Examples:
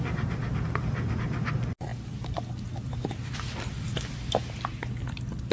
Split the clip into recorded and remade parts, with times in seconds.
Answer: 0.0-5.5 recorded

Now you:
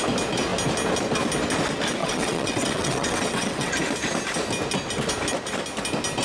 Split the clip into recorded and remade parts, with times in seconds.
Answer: 0.0-2.0 recorded; 2.0-3.7 remade; 3.7-6.2 recorded

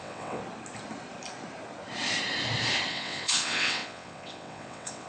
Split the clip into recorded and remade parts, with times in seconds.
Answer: 0.0-0.4 remade; 0.4-2.9 recorded; 2.9-5.1 remade